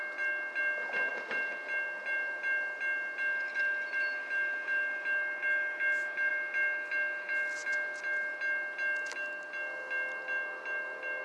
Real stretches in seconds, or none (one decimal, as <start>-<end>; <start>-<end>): 0.0-11.2